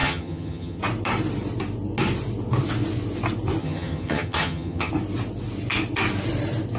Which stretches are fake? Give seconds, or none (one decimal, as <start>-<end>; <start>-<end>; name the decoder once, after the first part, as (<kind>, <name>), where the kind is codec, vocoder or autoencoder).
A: 0.0-0.8 (vocoder, HiFi-GAN); 3.6-4.9

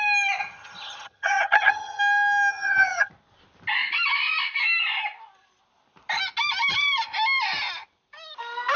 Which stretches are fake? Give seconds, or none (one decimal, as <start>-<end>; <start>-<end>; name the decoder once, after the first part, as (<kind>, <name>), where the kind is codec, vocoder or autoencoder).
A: 0.4-2.0 (vocoder, HiFi-GAN); 2.5-3.1

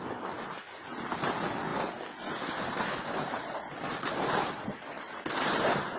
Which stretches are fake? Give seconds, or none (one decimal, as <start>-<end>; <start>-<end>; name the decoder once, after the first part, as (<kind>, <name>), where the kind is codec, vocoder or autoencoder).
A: none